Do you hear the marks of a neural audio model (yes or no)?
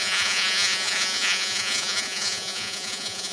yes